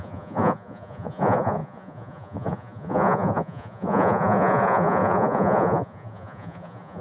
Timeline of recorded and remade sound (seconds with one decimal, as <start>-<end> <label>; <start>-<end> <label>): 0.0-7.0 remade